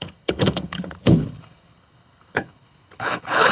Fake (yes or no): yes